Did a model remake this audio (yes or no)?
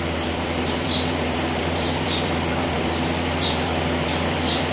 yes